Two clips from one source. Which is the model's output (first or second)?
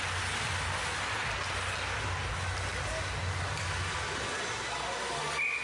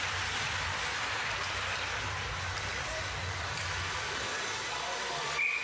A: second